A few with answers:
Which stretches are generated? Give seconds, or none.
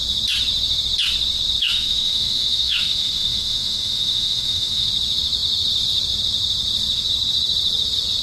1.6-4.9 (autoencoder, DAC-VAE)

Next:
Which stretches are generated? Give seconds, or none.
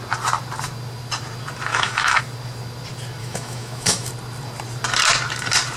1.7-2.2 (autoencoder, DAC-VAE); 3.2-4.1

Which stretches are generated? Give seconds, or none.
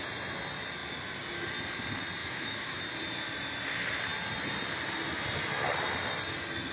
2.2-2.8 (autoencoder, DAC-VAE)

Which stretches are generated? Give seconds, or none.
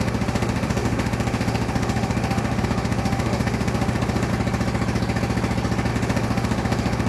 0.0-4.3 (autoencoder, DAC-VAE); 5.9-7.1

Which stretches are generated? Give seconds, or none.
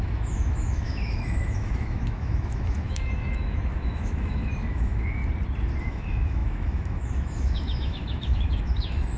0.0-5.2 (autoencoder, DAC-VAE); 5.8-9.2